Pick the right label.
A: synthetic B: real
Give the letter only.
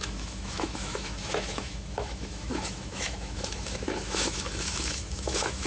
A